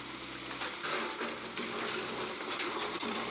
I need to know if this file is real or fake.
fake